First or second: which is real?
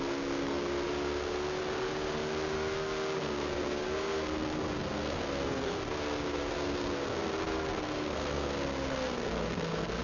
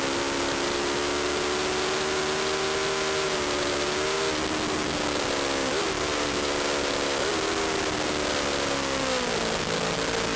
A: second